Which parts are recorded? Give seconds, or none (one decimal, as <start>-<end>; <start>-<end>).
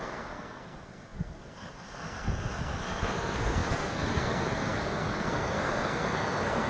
none